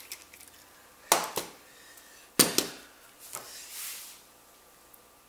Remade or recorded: recorded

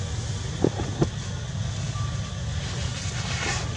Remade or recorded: recorded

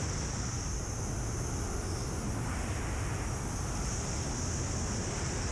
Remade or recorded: recorded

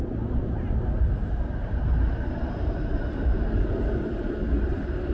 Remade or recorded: remade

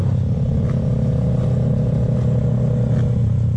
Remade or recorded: recorded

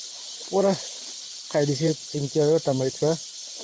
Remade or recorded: remade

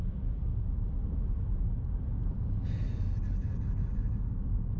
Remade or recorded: recorded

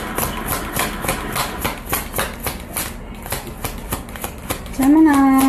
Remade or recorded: recorded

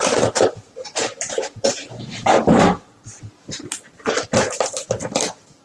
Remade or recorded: remade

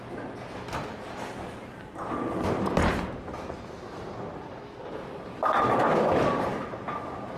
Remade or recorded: recorded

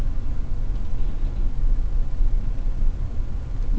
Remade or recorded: recorded